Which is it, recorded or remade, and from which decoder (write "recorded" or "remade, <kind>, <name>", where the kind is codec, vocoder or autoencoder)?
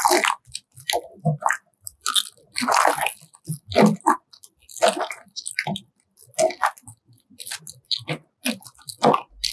recorded